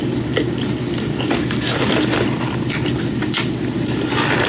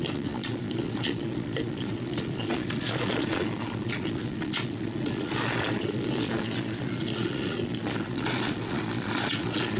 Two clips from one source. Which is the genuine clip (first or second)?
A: first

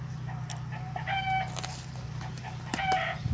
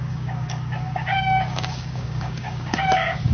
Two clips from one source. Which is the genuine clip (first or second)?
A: first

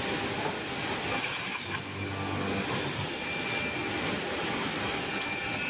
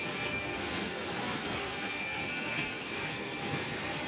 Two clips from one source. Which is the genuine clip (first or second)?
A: first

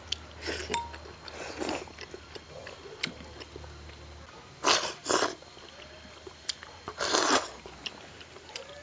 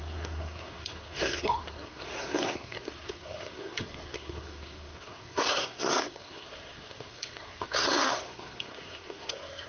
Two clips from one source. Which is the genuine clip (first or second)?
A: first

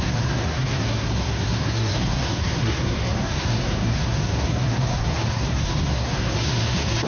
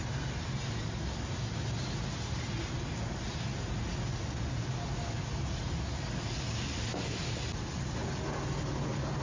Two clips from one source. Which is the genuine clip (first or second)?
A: second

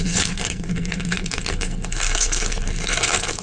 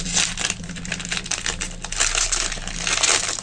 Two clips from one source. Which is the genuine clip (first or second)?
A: second